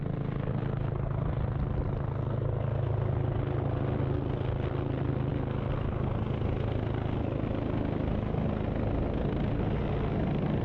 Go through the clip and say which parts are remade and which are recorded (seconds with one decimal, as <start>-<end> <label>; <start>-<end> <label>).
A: 0.0-10.6 recorded